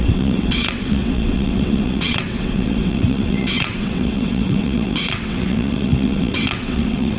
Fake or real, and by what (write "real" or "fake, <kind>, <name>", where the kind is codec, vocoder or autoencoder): fake, vocoder, WaveNeXt